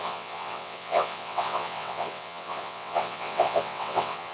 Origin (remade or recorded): remade